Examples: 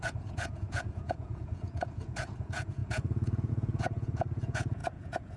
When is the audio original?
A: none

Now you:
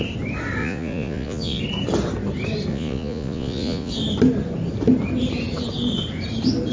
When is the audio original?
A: 0.0-0.6; 1.6-2.7; 3.9-6.7